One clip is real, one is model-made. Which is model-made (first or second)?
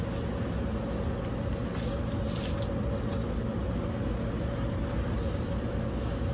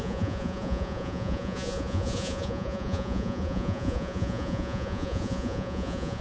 second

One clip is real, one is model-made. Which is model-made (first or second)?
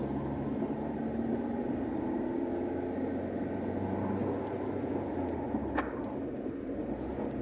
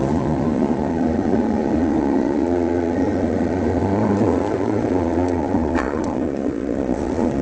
second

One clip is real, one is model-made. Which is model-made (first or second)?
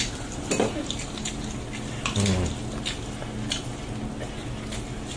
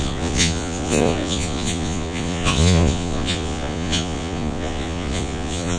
second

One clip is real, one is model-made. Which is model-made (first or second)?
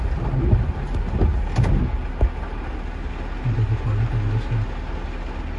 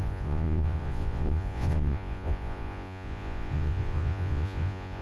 second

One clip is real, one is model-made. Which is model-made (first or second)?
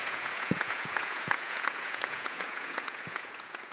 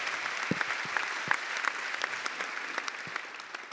first